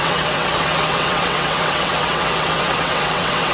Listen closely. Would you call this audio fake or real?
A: fake